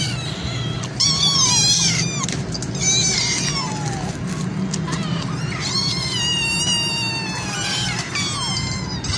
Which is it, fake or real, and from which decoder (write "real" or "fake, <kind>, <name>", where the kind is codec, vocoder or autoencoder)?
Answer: real